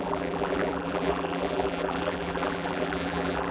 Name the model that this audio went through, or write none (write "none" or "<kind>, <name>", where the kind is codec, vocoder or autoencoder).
vocoder, BigVGAN v2